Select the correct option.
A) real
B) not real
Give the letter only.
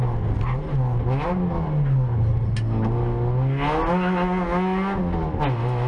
A